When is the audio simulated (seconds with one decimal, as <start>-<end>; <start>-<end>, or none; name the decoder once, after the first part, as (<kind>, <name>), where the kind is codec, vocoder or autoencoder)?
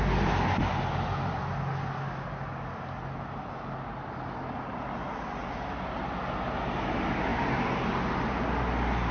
none